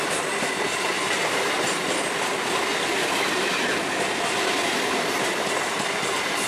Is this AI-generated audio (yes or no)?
no